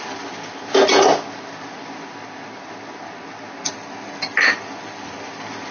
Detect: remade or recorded recorded